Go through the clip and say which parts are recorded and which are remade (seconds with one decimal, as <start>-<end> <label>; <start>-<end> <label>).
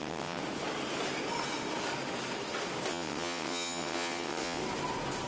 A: 0.0-0.4 remade; 0.4-2.9 recorded; 2.9-4.6 remade; 4.6-5.3 recorded